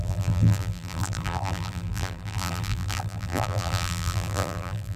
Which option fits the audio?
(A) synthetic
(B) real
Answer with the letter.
A